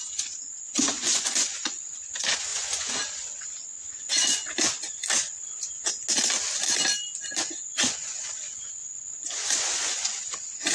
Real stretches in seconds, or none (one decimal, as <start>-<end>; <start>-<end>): 5.0-7.7